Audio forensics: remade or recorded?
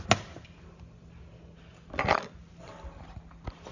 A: recorded